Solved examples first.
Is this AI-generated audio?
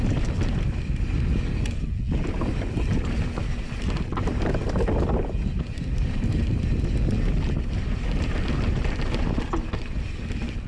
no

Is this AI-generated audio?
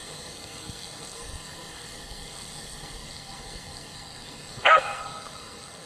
yes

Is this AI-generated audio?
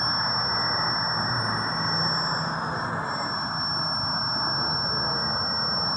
no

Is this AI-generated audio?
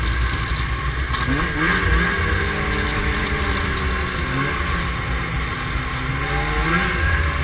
no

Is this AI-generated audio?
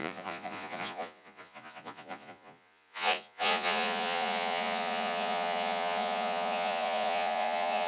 yes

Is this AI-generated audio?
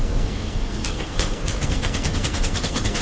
yes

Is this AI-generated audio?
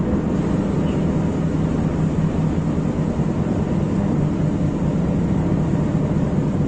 no